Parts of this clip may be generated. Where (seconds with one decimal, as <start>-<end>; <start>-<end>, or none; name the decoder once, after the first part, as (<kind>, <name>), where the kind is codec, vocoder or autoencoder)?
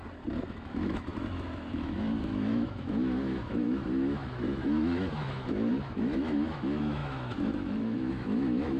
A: 0.5-8.8 (autoencoder, DAC-VAE)